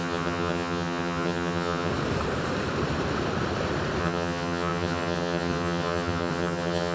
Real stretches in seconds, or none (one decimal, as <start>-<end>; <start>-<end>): 1.9-4.0